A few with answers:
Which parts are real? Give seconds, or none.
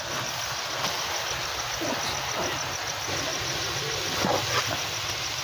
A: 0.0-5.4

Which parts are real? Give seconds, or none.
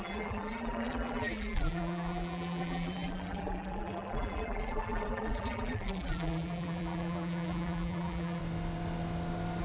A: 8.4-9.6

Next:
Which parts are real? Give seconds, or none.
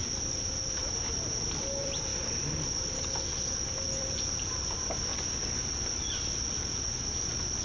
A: 0.0-1.1; 2.1-4.0; 5.1-7.6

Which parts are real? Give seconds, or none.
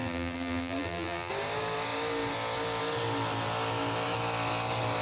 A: 1.3-5.0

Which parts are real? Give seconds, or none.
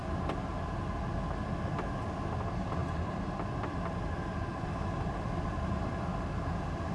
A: 0.0-2.8; 3.8-4.5; 5.9-6.9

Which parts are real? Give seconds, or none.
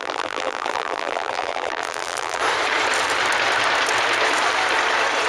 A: 2.4-5.3